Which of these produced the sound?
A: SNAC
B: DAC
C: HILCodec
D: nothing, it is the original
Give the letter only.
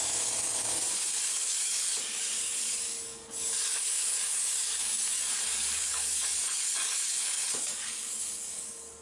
B